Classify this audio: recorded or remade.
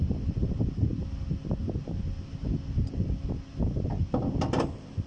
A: recorded